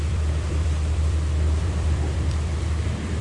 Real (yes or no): no